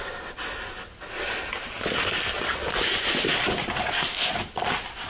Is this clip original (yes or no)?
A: yes